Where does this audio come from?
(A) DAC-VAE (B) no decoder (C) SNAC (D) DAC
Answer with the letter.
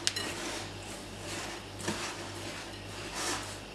B